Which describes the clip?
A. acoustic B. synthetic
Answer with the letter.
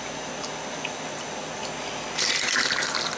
A